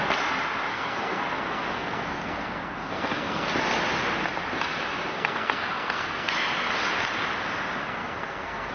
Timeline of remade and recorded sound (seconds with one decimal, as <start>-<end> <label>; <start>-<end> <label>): 0.0-0.7 recorded; 0.7-3.5 remade; 3.5-5.1 recorded; 5.1-6.3 remade; 6.3-7.8 recorded; 7.8-8.7 remade